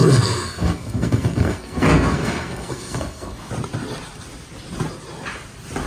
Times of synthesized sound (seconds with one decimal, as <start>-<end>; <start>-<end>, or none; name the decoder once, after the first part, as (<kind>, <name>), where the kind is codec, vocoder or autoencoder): 0.0-3.5 (codec, SNAC)